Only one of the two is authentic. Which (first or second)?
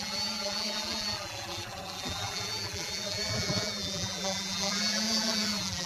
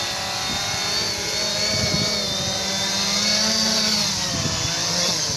second